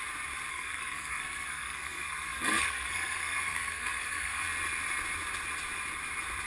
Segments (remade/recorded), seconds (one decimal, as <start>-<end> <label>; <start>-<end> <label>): 0.0-0.5 recorded; 0.5-4.4 remade; 4.4-6.5 recorded